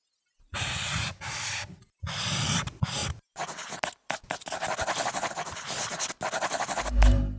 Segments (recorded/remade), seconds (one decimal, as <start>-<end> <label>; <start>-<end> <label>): 0.0-7.4 recorded